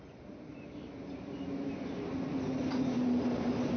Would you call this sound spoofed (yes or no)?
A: no